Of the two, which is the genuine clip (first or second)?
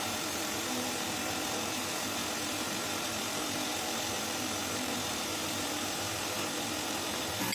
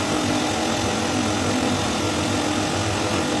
second